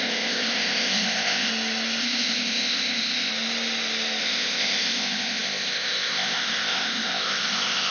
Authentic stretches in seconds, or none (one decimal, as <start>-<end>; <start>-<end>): 1.5-2.0; 3.3-4.2